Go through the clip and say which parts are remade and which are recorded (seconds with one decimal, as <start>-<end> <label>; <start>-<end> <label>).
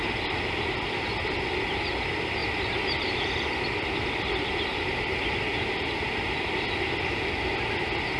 0.0-2.4 recorded; 2.4-3.3 remade; 3.3-4.7 recorded; 4.7-5.8 remade; 5.8-8.2 recorded